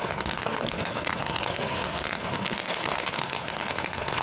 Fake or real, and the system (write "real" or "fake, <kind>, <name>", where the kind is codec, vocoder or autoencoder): fake, codec, SNAC